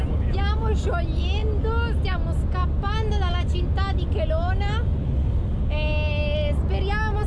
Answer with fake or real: real